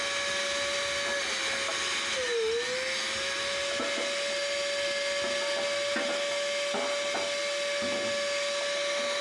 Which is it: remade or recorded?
recorded